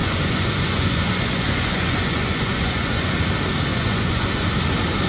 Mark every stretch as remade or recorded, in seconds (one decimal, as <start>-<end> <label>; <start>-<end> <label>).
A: 0.0-3.1 remade; 3.1-3.7 recorded; 3.7-4.5 remade; 4.5-5.1 recorded